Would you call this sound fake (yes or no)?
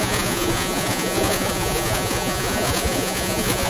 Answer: yes